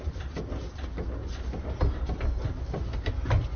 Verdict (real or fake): real